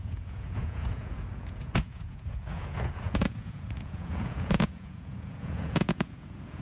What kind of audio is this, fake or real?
fake